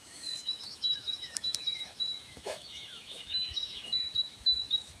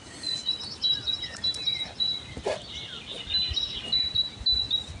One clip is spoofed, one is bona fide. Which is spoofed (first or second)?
first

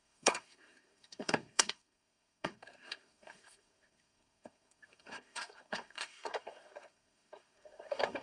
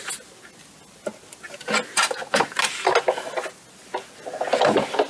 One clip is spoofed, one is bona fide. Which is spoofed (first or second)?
first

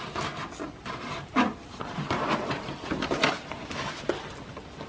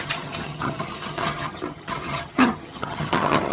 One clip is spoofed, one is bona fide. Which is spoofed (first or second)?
second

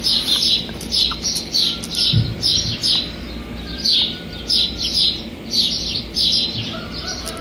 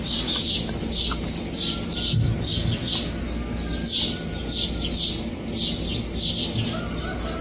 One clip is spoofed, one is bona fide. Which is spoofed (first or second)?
first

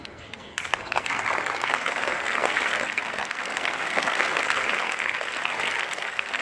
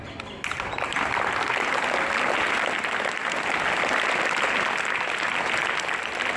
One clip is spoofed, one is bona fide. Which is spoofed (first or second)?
first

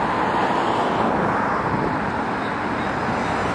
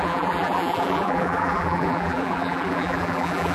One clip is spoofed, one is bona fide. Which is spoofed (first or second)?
second